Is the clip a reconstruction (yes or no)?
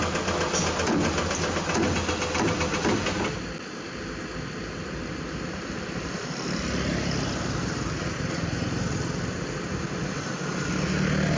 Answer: no